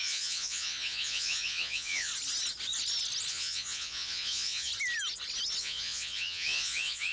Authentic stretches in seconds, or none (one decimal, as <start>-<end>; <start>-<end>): 2.1-3.3; 4.7-5.6

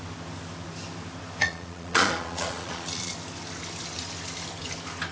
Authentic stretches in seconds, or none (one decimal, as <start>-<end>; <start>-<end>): 0.0-1.4; 3.1-5.1